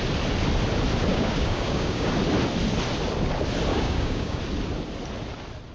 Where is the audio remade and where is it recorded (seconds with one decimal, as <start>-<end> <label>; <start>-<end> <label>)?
0.0-1.1 recorded; 1.1-2.1 remade; 2.1-3.7 recorded; 3.7-4.4 remade; 4.4-5.7 recorded